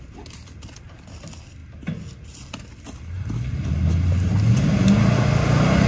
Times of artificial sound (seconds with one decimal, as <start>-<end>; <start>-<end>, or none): none